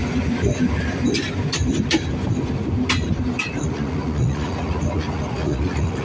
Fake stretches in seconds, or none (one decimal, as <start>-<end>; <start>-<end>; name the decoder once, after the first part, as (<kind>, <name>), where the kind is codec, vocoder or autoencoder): 3.6-6.0 (vocoder, Vocos)